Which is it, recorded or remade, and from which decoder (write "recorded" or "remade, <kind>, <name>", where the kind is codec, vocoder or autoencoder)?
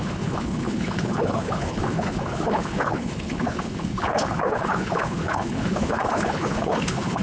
remade, codec, HILCodec